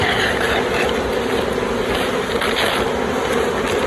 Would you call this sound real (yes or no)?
yes